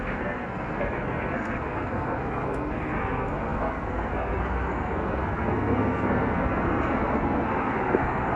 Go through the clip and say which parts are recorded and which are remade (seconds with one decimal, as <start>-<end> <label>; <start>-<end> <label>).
0.0-8.4 remade